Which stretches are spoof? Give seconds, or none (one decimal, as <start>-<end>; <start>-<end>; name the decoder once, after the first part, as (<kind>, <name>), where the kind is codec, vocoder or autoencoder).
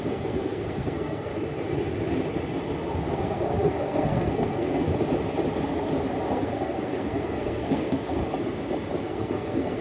0.0-1.3 (codec, SNAC); 3.1-4.9; 6.3-8.2; 9.0-9.8